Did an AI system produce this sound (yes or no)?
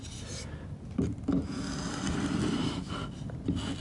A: no